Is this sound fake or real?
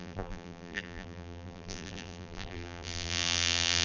fake